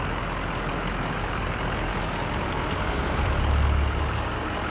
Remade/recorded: remade